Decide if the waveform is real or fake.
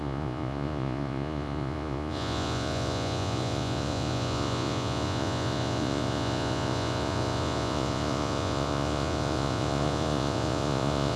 fake